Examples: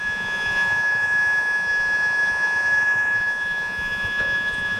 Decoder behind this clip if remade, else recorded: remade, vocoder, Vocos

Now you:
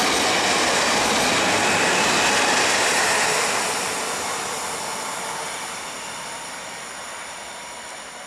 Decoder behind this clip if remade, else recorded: recorded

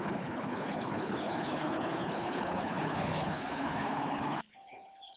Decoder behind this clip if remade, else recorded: remade, codec, HILCodec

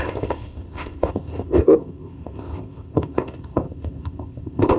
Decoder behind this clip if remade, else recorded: remade, codec, ZipCodec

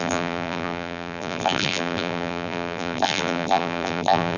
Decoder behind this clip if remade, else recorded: remade, vocoder, BigVGAN v2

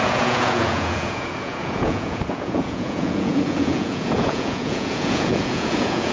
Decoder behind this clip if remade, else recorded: remade, vocoder, Vocos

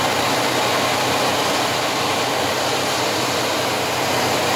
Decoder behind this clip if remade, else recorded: recorded